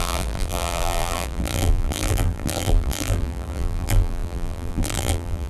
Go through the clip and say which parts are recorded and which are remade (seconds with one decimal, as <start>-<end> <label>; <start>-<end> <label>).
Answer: 0.0-5.5 remade